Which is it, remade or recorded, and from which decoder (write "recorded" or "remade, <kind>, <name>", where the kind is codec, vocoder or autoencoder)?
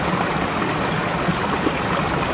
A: recorded